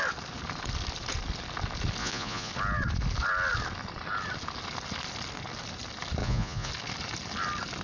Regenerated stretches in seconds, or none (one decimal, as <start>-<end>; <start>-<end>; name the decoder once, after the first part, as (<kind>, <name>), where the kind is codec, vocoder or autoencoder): 2.0-2.5 (vocoder, Vocos); 6.2-6.7